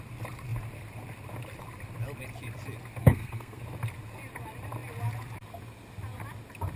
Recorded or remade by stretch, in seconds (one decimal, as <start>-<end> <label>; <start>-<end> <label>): 0.0-3.0 recorded; 3.0-3.6 remade; 3.6-6.8 recorded